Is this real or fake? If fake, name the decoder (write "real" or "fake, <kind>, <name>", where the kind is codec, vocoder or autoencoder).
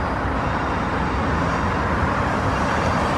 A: real